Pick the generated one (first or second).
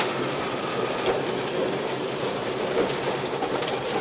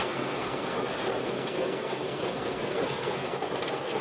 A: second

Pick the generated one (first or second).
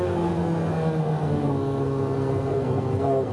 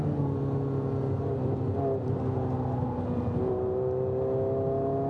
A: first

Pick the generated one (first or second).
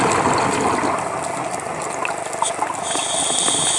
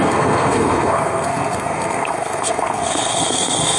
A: second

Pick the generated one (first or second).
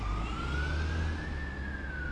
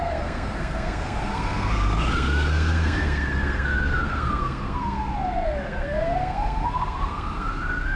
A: second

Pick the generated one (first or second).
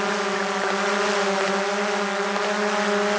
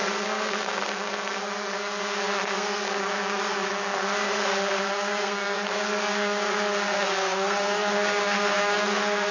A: second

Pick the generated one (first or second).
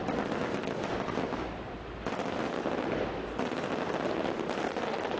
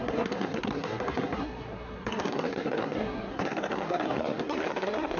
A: second